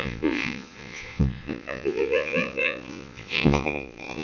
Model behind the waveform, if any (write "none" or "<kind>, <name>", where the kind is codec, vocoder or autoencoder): vocoder, Vocos